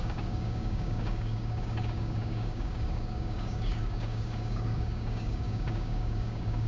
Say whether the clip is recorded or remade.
remade